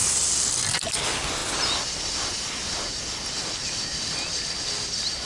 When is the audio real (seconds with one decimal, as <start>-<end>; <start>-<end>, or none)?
0.0-5.3